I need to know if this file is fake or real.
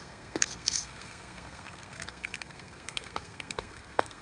fake